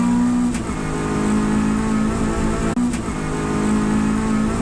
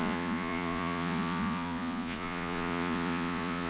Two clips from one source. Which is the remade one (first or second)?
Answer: second